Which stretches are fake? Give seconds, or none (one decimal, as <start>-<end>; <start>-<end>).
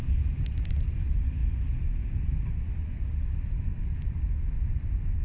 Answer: none